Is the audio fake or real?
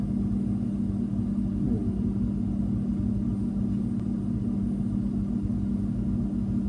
real